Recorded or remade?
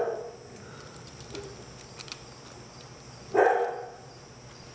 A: recorded